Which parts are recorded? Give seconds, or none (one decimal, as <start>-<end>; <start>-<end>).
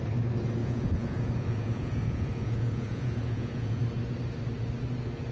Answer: 0.0-0.6; 3.8-5.3